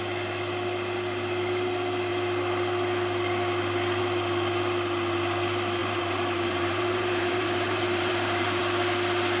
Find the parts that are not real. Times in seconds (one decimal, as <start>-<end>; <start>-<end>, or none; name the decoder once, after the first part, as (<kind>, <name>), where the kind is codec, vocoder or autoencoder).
5.8-8.6 (vocoder, BigVGAN v2)